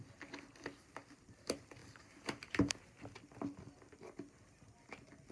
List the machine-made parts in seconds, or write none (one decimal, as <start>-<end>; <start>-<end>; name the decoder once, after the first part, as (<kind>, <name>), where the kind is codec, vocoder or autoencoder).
1.8-2.7 (vocoder, BigVGAN v2)